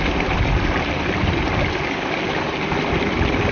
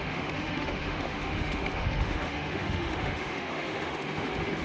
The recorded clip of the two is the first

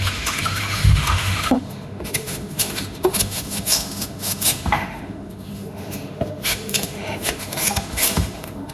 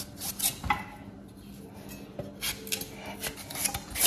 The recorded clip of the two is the second